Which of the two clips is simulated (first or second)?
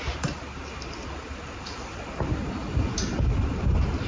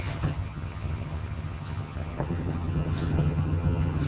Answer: second